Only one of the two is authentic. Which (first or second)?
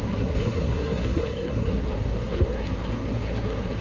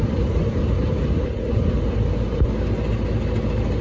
second